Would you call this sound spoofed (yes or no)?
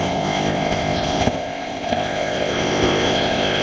yes